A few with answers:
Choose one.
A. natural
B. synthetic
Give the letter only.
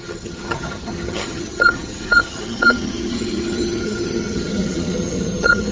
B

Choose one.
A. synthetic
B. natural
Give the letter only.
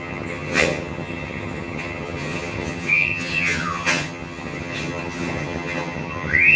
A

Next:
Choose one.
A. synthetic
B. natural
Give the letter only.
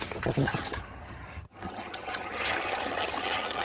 A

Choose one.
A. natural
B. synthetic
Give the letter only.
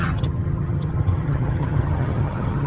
B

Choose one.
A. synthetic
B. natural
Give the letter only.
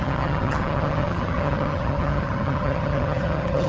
A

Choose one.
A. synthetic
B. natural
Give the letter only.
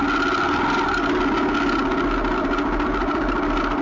B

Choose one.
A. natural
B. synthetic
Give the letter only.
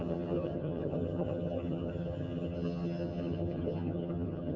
B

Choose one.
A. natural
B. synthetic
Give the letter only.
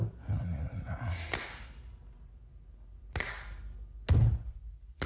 A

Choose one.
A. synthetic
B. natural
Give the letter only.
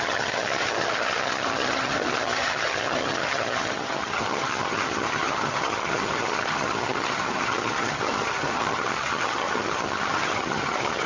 A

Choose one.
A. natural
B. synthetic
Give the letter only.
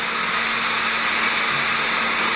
A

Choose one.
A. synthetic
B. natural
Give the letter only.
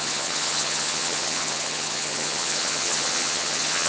A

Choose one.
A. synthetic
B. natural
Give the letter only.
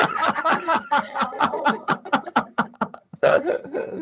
A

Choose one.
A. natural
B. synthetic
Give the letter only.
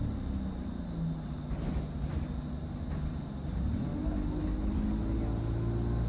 A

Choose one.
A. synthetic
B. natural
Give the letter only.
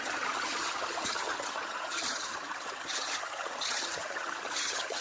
A